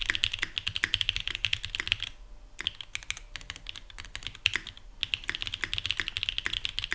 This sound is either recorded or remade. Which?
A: recorded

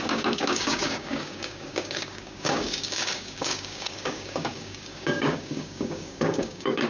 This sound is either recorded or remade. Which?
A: remade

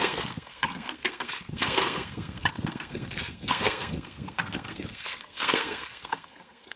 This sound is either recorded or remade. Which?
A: remade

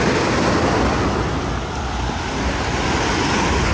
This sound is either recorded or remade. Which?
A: recorded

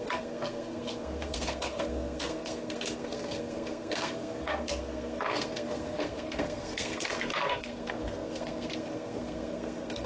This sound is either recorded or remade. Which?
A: remade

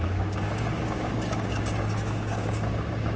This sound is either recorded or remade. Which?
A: remade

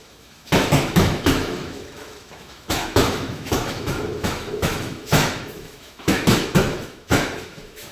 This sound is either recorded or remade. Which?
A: remade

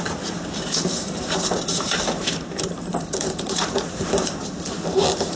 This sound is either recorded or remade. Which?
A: remade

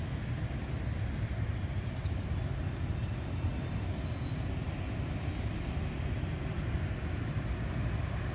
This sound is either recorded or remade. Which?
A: recorded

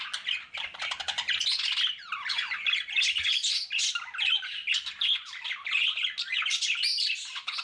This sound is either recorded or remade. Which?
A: recorded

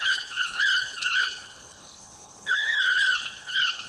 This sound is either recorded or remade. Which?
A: remade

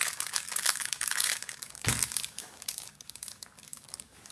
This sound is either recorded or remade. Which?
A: remade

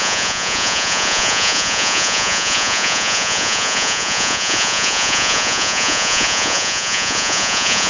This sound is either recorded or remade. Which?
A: remade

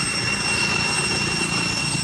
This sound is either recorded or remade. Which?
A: recorded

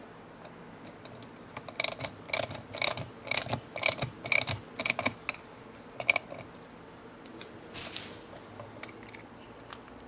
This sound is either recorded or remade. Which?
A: recorded